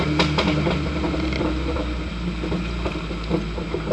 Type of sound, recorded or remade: recorded